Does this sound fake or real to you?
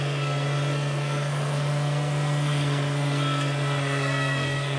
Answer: fake